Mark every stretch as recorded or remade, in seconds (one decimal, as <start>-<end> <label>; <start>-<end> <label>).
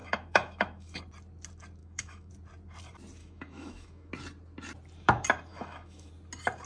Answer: 0.0-1.0 remade; 1.0-1.8 recorded; 1.8-2.3 remade; 2.3-3.2 recorded; 3.2-4.1 remade; 4.1-5.5 recorded; 5.5-6.1 remade; 6.1-6.7 recorded